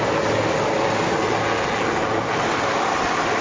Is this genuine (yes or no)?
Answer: yes